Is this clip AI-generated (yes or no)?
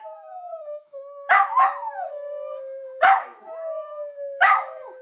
yes